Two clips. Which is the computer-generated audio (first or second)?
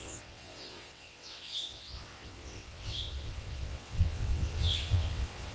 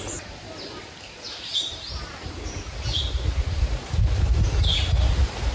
first